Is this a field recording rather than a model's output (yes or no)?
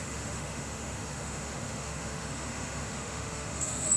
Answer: no